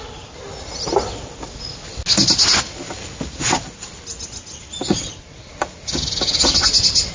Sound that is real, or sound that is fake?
real